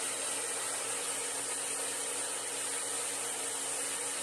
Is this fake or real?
real